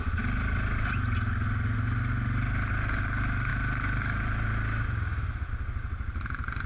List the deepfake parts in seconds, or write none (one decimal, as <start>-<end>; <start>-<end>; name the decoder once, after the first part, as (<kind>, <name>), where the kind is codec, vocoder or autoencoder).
none